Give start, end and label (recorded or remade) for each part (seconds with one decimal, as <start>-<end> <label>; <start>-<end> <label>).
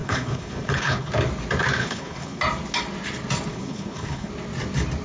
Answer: 0.0-1.1 remade; 1.1-1.8 recorded; 1.8-2.4 remade; 2.4-3.5 recorded; 3.5-4.3 remade; 4.3-5.0 recorded